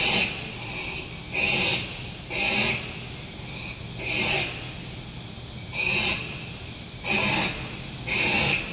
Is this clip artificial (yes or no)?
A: no